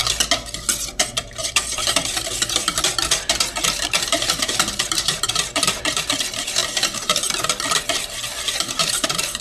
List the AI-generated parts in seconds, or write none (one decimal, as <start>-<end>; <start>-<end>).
0.8-6.6; 8.5-9.4